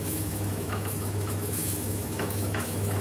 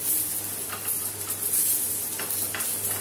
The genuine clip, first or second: second